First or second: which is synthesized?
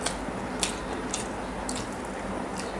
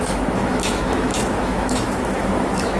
second